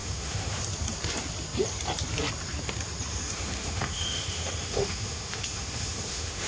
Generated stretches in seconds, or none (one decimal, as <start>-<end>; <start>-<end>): 0.0-0.6; 3.1-6.5